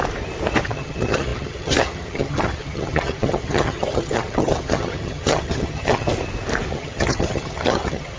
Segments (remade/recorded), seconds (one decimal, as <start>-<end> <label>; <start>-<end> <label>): 0.0-0.6 recorded; 0.6-6.1 remade; 6.1-6.7 recorded; 6.7-8.2 remade